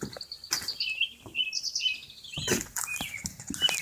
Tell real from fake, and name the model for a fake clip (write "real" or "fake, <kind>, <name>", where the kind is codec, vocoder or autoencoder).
real